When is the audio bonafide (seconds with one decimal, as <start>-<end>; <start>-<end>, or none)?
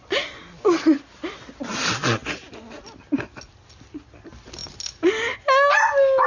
0.0-6.3